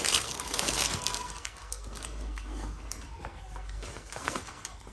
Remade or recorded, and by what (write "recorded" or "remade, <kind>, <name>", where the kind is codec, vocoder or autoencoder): remade, codec, SNAC